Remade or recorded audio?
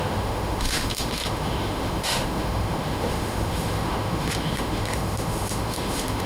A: remade